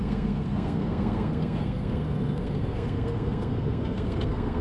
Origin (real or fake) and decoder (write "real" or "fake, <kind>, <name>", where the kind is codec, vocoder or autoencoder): fake, codec, SNAC